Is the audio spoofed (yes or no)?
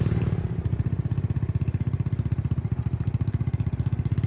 no